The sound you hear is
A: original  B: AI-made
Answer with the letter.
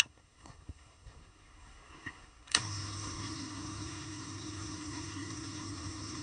B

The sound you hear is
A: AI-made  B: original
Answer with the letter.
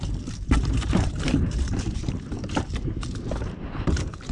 A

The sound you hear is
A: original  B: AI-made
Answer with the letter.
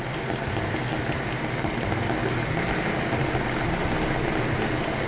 A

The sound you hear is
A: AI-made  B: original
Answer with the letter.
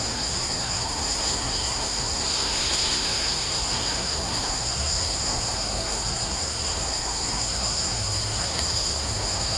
A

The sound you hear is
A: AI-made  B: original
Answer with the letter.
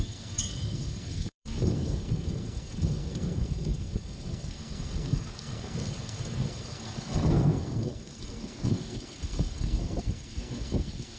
A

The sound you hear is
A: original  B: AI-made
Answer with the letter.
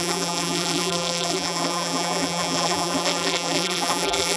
B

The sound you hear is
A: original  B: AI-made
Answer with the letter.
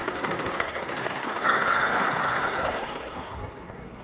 B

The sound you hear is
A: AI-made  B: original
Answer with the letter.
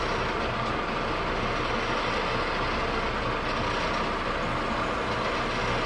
B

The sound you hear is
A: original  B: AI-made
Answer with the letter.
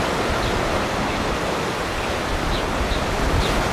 A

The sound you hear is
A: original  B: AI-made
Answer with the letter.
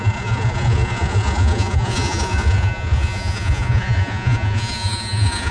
B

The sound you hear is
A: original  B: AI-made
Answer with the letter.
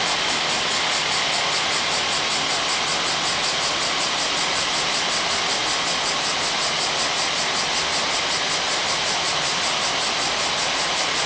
A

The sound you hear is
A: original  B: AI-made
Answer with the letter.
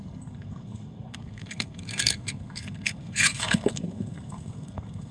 B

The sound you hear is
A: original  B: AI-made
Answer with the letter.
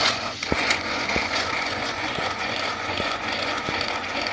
B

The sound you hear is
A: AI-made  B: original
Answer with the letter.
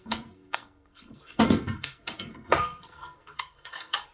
A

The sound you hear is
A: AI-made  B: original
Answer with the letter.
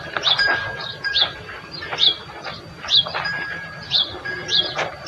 A